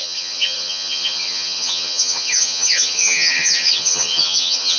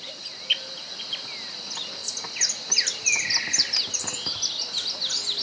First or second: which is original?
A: second